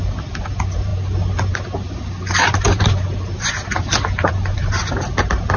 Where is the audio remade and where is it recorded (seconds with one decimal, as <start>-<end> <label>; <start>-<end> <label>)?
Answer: 0.0-5.6 recorded